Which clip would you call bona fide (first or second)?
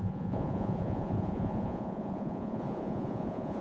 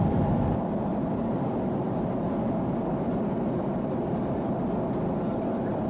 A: second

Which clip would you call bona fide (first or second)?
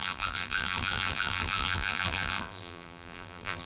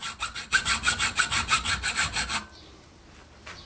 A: second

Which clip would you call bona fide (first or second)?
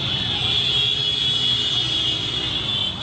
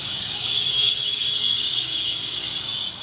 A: first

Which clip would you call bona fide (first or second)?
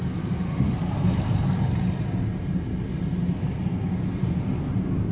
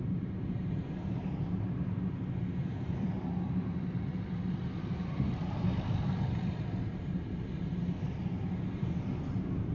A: first